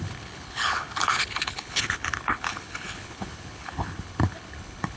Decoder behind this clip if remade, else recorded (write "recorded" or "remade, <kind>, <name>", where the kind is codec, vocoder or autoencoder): remade, codec, HILCodec